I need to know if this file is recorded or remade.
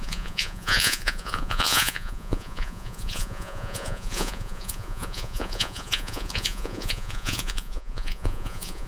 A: remade